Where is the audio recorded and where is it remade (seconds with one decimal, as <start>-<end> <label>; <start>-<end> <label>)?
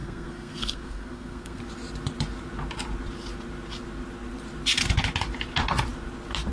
0.0-1.6 remade; 1.6-6.5 recorded